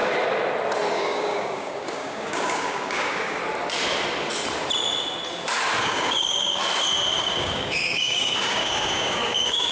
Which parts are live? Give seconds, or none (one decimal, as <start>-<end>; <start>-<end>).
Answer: 0.0-0.9; 3.4-5.8; 6.6-7.2